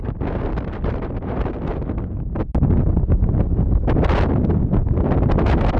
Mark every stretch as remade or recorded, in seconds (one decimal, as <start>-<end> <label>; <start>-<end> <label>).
0.0-5.8 recorded